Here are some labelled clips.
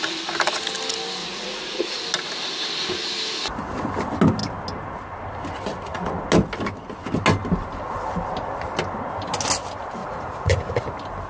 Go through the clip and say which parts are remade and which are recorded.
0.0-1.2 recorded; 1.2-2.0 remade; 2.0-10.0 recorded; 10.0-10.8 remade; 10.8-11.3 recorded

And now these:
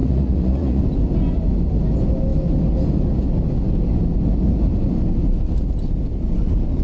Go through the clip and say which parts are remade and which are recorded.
0.0-0.8 remade; 0.8-6.8 recorded

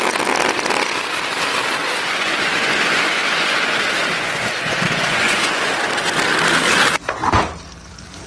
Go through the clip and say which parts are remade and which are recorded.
0.0-1.8 recorded; 1.8-5.7 remade; 5.7-8.3 recorded

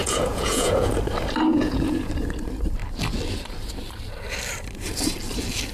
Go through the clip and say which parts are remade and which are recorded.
0.0-1.0 remade; 1.0-1.5 recorded; 1.5-2.1 remade; 2.1-5.7 recorded

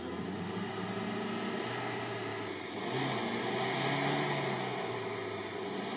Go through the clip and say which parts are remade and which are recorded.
0.0-6.0 recorded

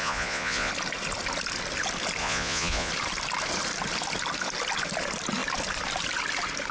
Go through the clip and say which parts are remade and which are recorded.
0.0-0.7 remade; 0.7-2.2 recorded; 2.2-2.9 remade; 2.9-6.7 recorded

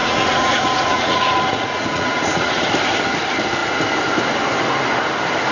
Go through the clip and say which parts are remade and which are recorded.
0.0-2.7 remade; 2.7-5.5 recorded